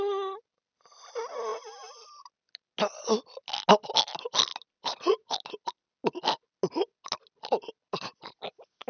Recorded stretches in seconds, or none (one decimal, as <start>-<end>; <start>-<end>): 0.0-8.9